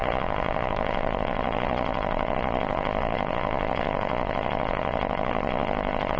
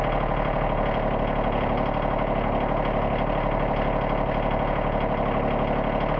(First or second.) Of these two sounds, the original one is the second